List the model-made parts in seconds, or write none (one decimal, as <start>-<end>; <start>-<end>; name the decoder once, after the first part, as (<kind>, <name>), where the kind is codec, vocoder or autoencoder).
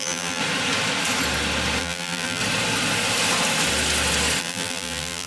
0.0-0.4 (vocoder, BigVGAN v2); 1.8-2.4; 4.4-5.3